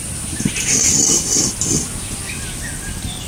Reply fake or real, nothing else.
real